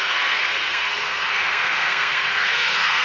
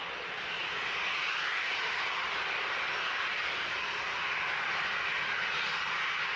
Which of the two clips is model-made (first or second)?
first